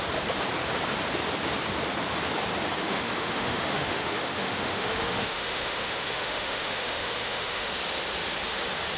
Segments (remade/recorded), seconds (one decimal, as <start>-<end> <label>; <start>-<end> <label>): 0.0-2.8 recorded; 2.8-7.7 remade; 7.7-9.0 recorded